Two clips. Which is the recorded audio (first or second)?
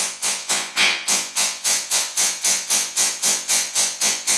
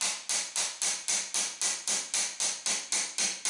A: second